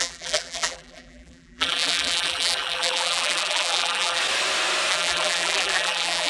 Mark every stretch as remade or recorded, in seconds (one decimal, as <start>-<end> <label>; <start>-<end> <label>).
0.0-4.2 remade; 4.2-4.9 recorded; 4.9-6.3 remade